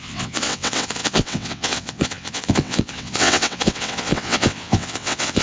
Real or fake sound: fake